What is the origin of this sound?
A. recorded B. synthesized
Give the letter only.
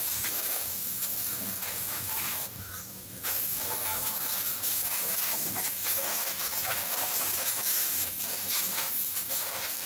B